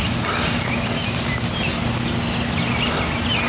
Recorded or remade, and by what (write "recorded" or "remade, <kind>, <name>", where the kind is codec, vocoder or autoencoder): recorded